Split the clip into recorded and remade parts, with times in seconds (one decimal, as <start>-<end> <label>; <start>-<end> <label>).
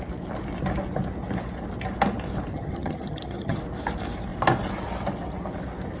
0.0-2.5 recorded; 2.5-3.6 remade; 3.6-6.0 recorded